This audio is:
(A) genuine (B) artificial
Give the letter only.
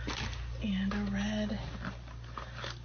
A